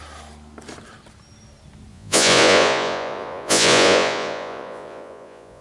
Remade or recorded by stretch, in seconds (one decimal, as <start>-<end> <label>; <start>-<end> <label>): 0.0-1.9 recorded; 1.9-5.6 remade